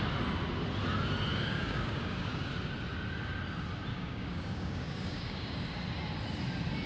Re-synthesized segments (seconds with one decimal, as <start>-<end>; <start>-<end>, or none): 1.3-2.5; 3.9-5.7